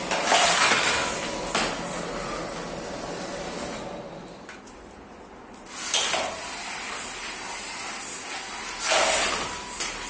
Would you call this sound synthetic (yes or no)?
no